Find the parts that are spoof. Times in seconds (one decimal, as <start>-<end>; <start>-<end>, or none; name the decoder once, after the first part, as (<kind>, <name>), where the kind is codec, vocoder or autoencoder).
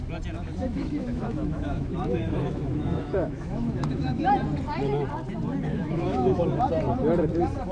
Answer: 0.6-4.3 (autoencoder, DAC-VAE); 5.7-6.6